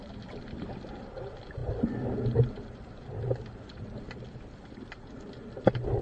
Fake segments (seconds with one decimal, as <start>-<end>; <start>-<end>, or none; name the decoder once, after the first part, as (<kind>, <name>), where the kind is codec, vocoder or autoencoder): none